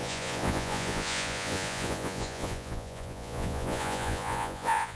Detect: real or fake fake